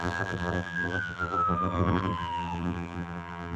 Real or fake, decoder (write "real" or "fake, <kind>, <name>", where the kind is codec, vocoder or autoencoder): fake, vocoder, BigVGAN v2